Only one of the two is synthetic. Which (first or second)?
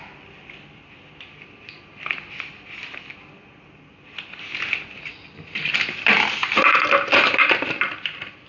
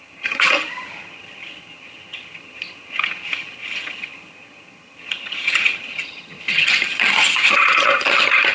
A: second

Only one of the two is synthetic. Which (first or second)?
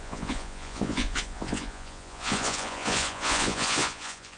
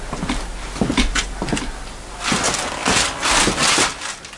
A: first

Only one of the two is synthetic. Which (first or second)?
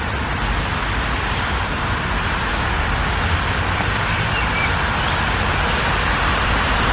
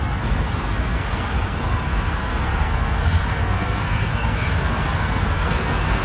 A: second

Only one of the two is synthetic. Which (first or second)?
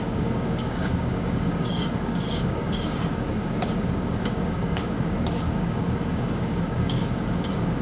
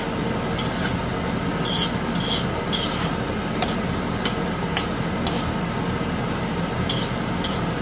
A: first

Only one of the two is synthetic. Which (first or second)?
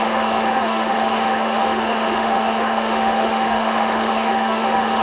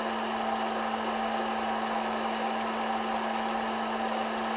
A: first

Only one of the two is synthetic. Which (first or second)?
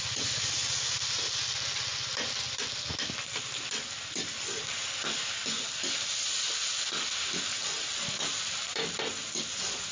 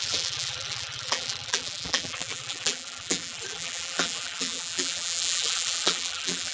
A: second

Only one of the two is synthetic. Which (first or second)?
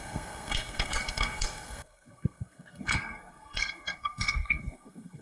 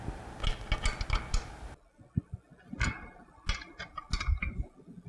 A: first